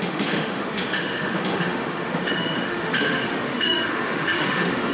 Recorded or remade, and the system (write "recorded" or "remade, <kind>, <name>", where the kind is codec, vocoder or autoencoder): remade, autoencoder, DAC-VAE